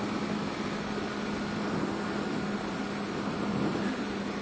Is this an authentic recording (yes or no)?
yes